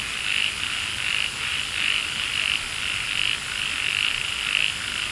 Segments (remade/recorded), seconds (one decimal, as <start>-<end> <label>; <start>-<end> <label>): 0.0-5.1 recorded